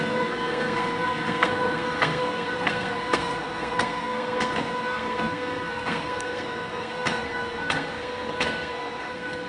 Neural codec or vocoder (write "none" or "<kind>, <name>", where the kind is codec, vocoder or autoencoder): codec, SNAC